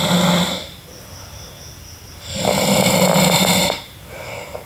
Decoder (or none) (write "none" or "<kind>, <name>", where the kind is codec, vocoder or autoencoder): none